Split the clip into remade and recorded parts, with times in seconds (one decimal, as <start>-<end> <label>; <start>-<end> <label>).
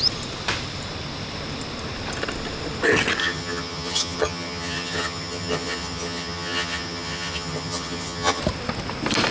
0.0-3.2 recorded; 3.2-8.4 remade; 8.4-9.3 recorded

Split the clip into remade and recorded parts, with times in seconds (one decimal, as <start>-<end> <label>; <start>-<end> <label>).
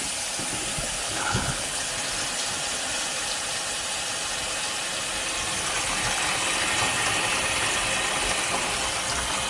0.0-1.0 recorded; 1.0-1.9 remade; 1.9-9.5 recorded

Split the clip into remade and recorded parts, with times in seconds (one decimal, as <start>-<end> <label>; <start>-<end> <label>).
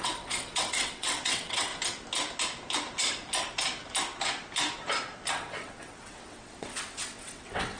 0.0-1.7 remade; 1.7-5.3 recorded; 5.3-7.8 remade